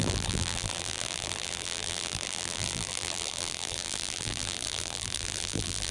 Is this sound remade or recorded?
remade